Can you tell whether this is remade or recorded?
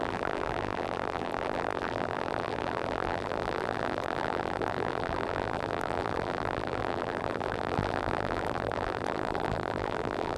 remade